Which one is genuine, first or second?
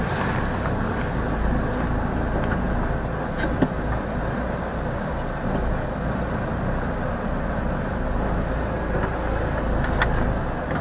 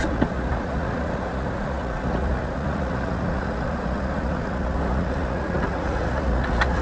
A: first